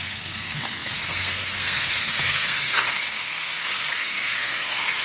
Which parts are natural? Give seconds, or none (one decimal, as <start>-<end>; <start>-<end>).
none